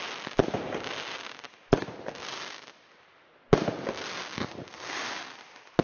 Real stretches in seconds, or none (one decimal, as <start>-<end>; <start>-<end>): 0.0-5.8